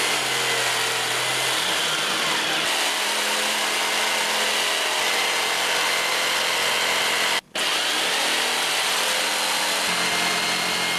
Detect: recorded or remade recorded